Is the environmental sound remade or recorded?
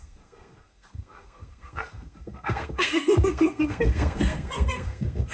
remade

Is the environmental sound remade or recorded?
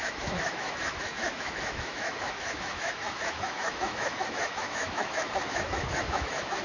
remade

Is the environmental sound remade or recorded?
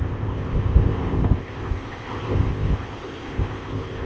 remade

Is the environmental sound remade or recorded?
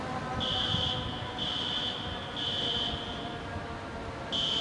recorded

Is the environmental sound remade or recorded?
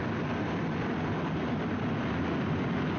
recorded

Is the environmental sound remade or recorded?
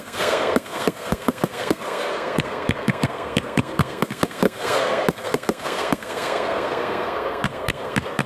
remade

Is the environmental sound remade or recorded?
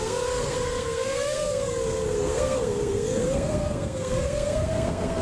remade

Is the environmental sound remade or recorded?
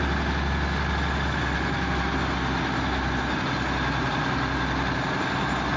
recorded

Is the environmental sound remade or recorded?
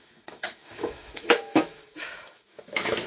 remade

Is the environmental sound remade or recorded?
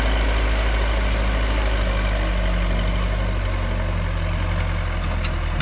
recorded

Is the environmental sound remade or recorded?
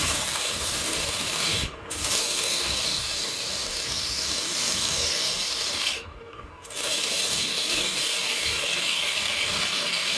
remade